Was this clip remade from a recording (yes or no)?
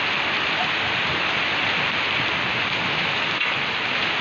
no